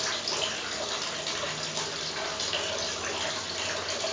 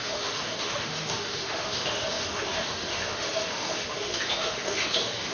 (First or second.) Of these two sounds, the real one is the first